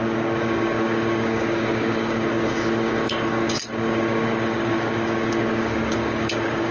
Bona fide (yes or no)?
no